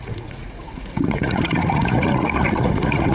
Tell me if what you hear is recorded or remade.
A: remade